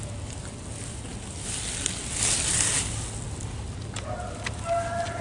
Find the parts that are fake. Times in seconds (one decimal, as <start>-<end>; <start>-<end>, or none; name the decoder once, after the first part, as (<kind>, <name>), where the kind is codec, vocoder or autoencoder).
none